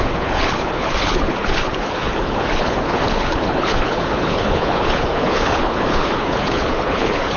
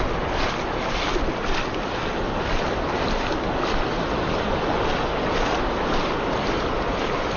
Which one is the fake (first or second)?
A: first